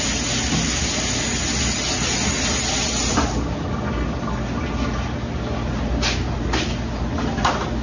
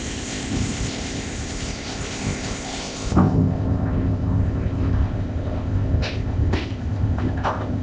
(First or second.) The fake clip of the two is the second